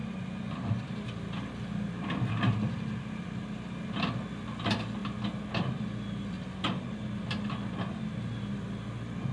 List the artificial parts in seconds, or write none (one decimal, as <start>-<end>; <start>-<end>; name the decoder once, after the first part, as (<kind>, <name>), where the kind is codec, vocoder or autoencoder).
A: none